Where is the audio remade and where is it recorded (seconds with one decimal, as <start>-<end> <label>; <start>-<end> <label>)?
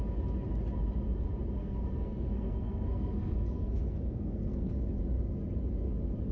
0.0-1.6 recorded; 1.6-4.7 remade; 4.7-6.3 recorded